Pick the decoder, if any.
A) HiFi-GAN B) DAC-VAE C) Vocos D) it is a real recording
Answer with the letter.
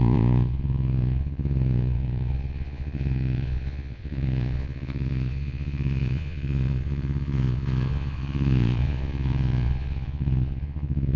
C